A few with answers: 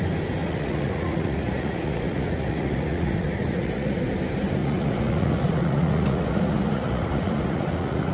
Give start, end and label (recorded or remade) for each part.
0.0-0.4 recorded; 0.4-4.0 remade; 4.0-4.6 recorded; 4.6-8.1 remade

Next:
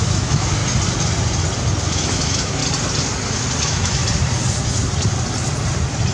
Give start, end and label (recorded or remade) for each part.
0.0-0.6 remade; 0.6-1.9 recorded; 1.9-2.6 remade; 2.6-3.6 recorded; 3.6-4.0 remade; 4.0-6.1 recorded

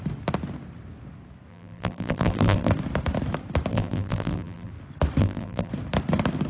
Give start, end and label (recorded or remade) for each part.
0.0-1.5 recorded; 1.5-2.7 remade; 2.7-3.7 recorded; 3.7-4.7 remade; 4.7-5.2 recorded; 5.2-5.7 remade; 5.7-6.5 recorded

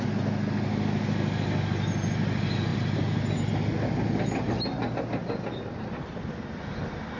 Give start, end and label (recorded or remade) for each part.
0.0-7.2 recorded

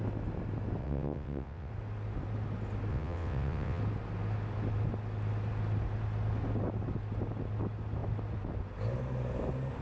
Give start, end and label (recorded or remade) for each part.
0.0-0.8 recorded; 0.8-1.7 remade; 1.7-2.9 recorded; 2.9-3.8 remade; 3.8-9.8 recorded

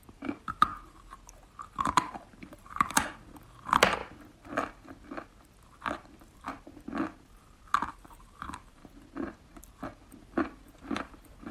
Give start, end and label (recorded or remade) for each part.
0.0-0.7 remade; 0.7-1.8 recorded; 1.8-4.0 remade; 4.0-7.9 recorded; 7.9-8.8 remade; 8.8-10.1 recorded; 10.1-11.5 remade

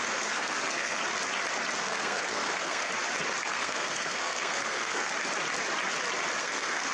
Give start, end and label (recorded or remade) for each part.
0.0-1.0 remade; 1.0-1.8 recorded; 1.8-2.9 remade; 2.9-3.4 recorded; 3.4-5.1 remade; 5.1-6.4 recorded; 6.4-6.9 remade